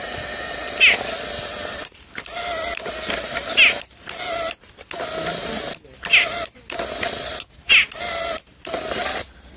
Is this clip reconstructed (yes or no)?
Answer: no